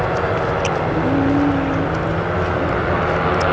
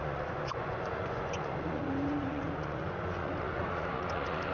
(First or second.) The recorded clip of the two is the first